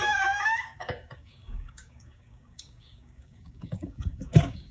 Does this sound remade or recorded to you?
remade